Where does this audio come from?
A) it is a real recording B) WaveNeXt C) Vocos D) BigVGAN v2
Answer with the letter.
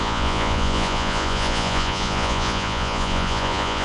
C